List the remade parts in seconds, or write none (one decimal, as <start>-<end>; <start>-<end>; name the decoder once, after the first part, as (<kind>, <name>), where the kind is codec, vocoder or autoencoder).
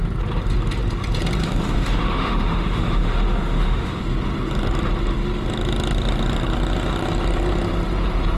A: 1.4-4.0 (autoencoder, DAC-VAE)